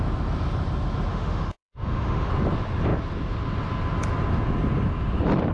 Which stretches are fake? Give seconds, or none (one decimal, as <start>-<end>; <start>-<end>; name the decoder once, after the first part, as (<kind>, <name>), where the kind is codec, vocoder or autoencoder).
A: 1.1-2.3 (autoencoder, DAC-VAE)